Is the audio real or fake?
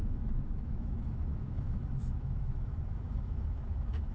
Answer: fake